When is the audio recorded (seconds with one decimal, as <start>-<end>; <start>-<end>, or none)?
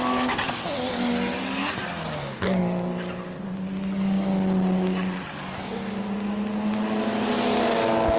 0.0-8.2